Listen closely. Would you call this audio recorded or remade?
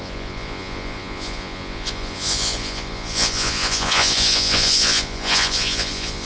remade